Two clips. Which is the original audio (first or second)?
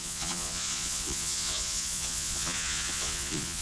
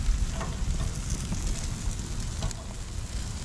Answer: second